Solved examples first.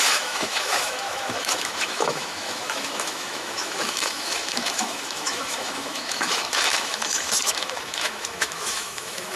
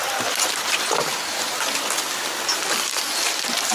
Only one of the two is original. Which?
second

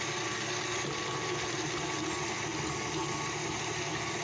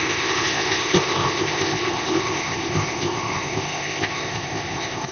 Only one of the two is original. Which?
first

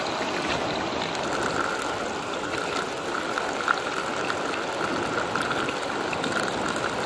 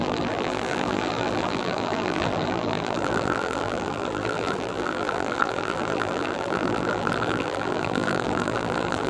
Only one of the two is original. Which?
first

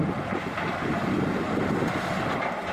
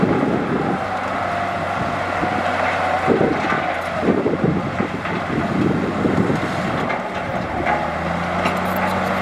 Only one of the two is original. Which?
second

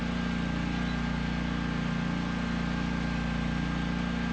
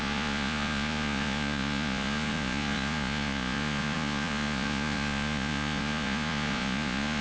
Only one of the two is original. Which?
first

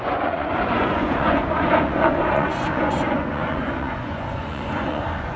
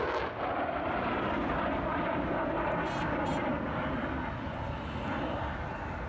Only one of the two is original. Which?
second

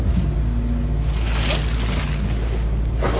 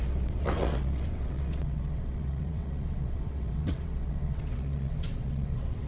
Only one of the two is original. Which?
first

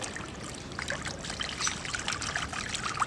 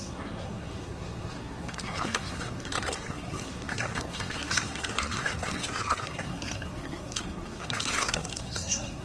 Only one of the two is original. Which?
first